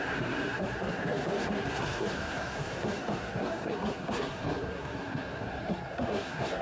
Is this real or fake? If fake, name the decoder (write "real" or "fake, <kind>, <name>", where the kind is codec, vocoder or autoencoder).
fake, codec, SNAC